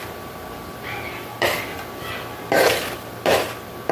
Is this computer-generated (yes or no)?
no